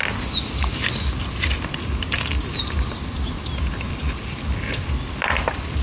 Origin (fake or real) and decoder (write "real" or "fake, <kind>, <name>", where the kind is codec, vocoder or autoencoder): real